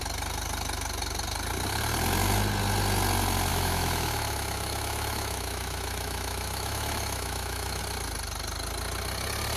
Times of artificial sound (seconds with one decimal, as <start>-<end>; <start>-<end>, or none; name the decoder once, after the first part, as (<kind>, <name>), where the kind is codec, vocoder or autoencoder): 3.5-7.8 (autoencoder, DAC-VAE)

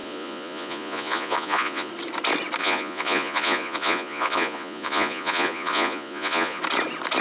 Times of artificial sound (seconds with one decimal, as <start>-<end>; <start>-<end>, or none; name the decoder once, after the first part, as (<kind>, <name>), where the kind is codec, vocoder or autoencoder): 0.0-1.9 (vocoder, Vocos); 2.6-6.6